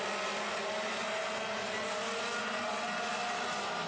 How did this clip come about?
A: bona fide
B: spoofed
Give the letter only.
A